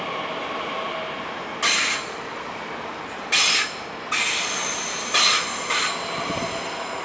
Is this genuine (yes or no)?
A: yes